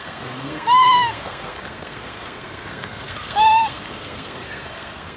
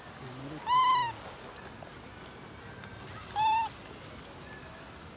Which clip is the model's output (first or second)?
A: first